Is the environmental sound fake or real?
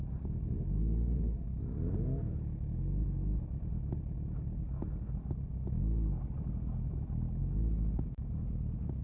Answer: real